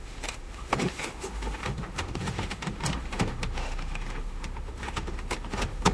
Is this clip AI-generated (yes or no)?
yes